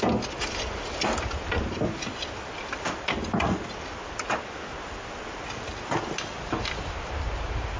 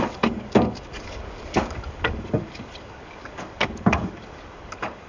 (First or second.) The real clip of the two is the first